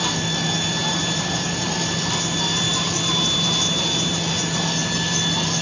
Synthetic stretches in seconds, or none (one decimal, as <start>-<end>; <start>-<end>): 0.8-1.8